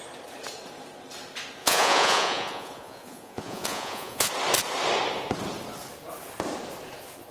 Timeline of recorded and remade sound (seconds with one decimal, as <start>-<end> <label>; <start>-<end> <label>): 0.0-1.6 recorded; 1.6-4.3 remade; 4.3-7.3 recorded